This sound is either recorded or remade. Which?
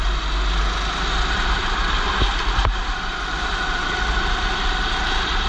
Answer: recorded